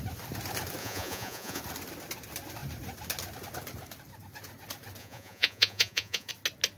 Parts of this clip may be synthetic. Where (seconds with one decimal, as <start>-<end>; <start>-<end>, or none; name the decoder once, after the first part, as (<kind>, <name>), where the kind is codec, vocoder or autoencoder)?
0.8-1.6 (vocoder, Vocos); 5.0-6.3